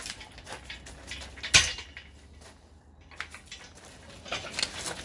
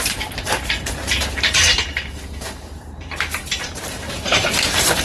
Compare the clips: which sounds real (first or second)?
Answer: first